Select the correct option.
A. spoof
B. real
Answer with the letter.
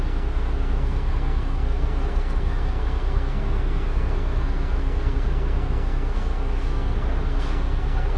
A